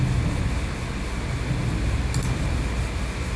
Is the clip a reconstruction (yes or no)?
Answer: no